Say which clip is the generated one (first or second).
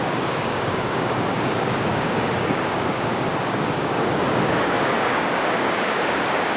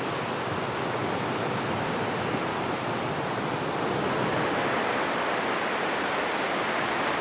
first